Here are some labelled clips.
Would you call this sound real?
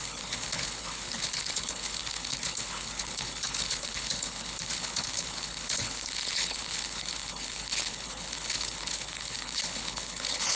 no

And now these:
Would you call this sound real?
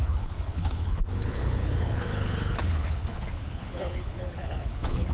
no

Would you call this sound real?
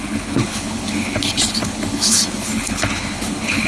no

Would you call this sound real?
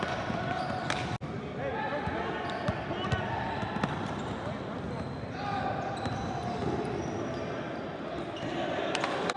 yes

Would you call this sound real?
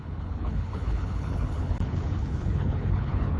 no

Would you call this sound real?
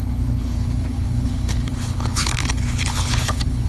no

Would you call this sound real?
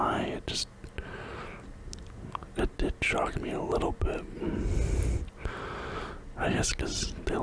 yes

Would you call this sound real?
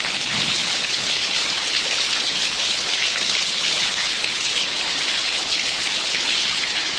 no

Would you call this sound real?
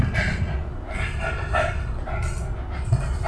yes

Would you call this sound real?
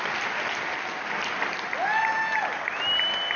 yes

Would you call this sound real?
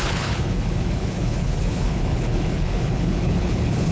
no